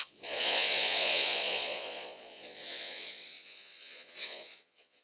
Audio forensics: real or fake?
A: fake